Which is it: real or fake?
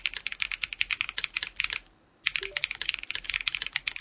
real